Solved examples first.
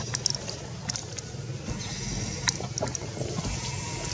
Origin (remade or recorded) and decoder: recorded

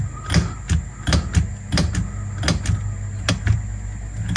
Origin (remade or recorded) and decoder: recorded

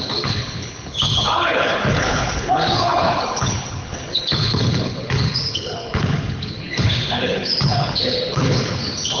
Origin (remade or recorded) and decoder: remade, codec, HILCodec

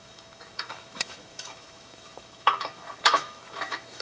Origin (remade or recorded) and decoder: remade, autoencoder, DAC-VAE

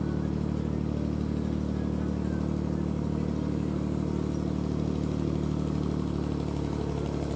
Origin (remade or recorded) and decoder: recorded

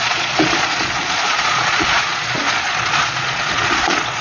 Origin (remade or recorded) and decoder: remade, vocoder, Vocos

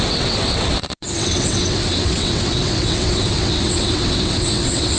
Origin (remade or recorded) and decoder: remade, vocoder, WaveNeXt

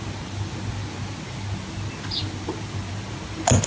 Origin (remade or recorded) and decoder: recorded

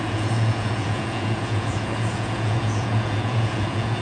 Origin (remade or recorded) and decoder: remade, vocoder, Vocos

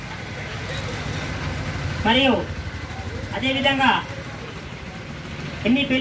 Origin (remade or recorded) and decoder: recorded